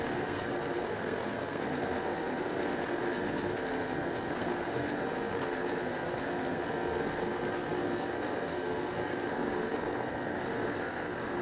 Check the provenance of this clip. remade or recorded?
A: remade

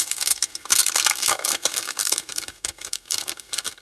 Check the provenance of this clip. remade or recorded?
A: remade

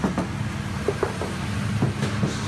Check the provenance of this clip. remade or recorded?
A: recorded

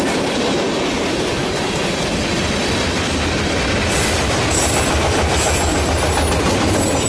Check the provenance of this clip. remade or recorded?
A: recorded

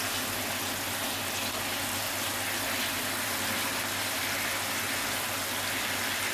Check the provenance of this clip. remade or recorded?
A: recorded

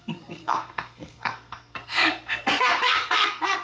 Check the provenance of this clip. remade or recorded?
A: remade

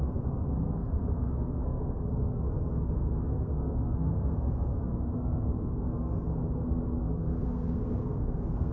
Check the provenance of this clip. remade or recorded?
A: remade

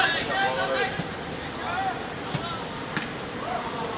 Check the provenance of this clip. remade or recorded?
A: recorded